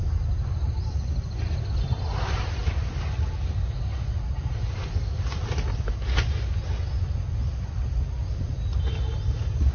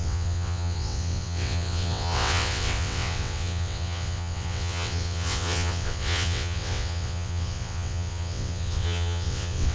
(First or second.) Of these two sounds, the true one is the first